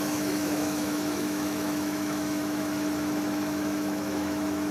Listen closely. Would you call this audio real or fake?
fake